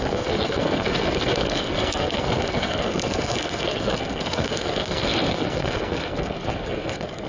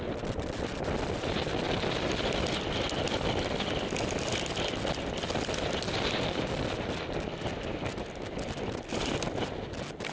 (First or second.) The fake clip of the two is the first